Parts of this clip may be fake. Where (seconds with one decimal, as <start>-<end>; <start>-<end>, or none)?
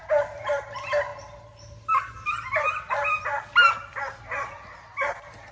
none